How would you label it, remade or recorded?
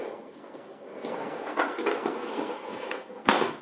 remade